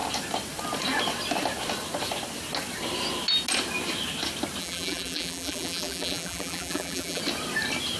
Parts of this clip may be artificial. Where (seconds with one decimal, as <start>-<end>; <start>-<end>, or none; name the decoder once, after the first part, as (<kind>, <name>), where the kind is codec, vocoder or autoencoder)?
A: 4.6-7.2 (vocoder, BigVGAN v2)

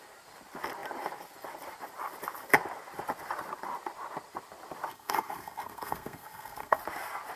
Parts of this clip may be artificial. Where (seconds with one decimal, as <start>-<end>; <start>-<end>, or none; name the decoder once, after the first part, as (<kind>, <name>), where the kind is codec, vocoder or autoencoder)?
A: 4.9-6.8 (codec, SNAC)

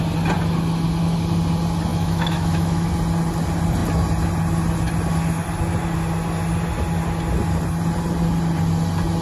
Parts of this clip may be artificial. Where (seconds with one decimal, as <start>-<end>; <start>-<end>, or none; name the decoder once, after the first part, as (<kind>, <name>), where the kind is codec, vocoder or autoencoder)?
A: 1.9-2.9 (autoencoder, DAC-VAE)

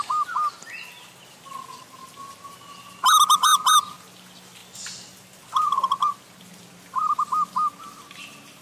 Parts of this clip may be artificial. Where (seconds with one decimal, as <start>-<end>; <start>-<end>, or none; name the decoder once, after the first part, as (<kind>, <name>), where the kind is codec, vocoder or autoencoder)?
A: none

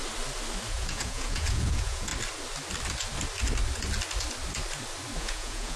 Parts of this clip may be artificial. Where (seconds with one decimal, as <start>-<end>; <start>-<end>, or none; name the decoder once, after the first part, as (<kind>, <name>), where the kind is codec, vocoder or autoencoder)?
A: 0.7-2.1 (vocoder, Vocos); 5.2-5.8

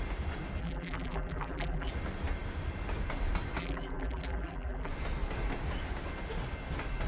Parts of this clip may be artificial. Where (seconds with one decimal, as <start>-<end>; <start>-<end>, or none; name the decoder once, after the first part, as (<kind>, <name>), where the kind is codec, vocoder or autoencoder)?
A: 0.6-1.9 (vocoder, BigVGAN v2); 3.6-4.9

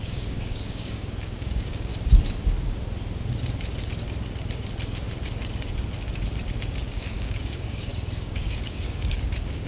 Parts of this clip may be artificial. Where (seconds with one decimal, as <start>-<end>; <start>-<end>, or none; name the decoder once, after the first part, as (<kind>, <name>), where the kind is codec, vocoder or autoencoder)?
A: 0.0-1.9 (codec, DAC); 6.6-9.7

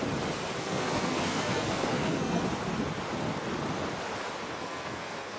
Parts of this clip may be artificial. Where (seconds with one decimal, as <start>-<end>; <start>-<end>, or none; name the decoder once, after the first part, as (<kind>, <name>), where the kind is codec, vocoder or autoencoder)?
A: 0.6-2.4 (codec, SNAC); 4.6-5.4